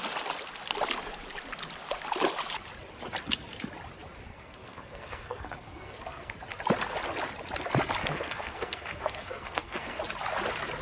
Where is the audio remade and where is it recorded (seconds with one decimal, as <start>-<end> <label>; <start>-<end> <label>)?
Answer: 0.0-4.3 recorded; 4.3-6.3 remade; 6.3-8.0 recorded; 8.0-10.0 remade; 10.0-10.8 recorded